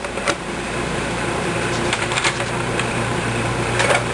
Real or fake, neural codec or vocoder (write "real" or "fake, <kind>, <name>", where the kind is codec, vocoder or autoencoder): fake, vocoder, BigVGAN v2